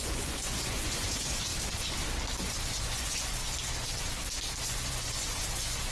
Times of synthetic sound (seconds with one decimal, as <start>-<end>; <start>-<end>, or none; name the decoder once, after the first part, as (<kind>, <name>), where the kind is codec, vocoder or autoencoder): 0.0-1.5 (vocoder, Vocos); 2.5-3.4; 4.6-5.9